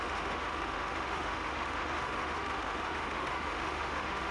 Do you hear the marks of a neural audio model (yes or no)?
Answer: yes